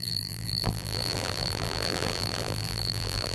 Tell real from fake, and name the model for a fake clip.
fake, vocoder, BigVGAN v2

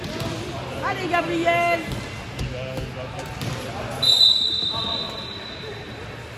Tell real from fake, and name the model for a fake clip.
real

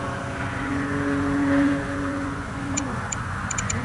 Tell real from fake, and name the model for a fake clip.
fake, vocoder, Vocos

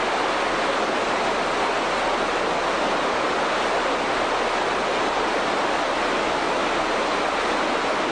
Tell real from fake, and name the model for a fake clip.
real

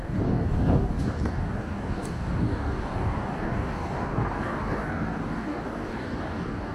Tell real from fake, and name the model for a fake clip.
fake, codec, DAC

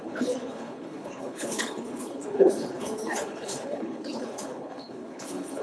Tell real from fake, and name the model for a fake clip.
fake, codec, HILCodec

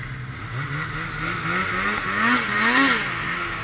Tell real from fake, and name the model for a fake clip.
real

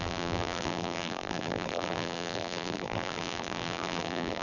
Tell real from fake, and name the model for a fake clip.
fake, vocoder, BigVGAN v2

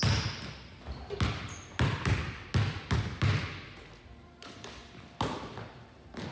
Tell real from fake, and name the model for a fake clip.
real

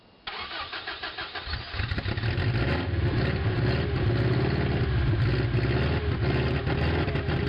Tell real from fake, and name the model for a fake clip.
real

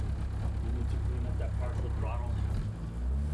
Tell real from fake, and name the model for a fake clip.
real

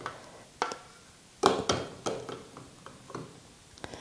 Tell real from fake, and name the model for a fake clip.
real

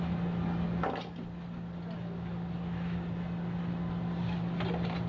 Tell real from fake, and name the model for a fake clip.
real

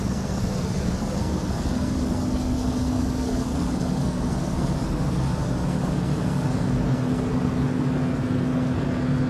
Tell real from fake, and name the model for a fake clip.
fake, codec, SNAC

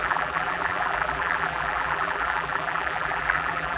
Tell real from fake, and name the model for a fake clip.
fake, vocoder, BigVGAN v2